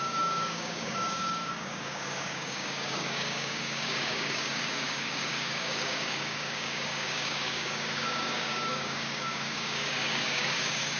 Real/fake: fake